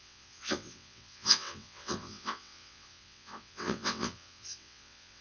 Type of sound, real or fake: fake